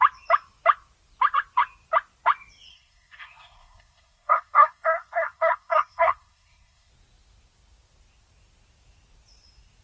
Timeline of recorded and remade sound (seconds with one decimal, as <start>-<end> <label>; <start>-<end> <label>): 0.0-2.7 recorded; 2.7-6.9 remade; 6.9-9.8 recorded